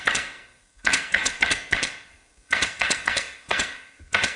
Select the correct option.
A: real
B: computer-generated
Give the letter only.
B